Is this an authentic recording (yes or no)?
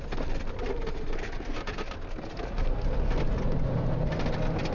yes